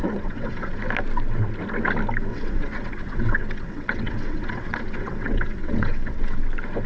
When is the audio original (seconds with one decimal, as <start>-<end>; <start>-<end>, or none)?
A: 0.8-2.3; 6.4-6.9